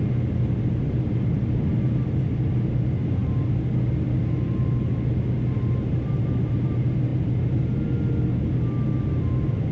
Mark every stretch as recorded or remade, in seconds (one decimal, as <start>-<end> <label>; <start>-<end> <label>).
0.0-9.7 recorded